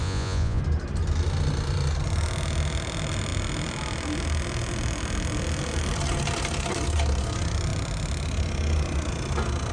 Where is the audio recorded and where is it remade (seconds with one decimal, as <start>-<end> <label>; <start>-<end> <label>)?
0.0-0.6 remade; 0.6-9.7 recorded